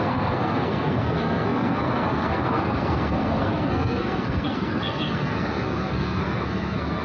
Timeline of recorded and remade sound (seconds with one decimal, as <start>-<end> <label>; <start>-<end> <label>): 0.0-7.0 remade